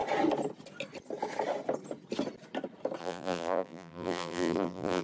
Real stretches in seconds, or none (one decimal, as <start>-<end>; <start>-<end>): 0.0-3.0